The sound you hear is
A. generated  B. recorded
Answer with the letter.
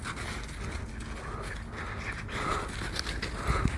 B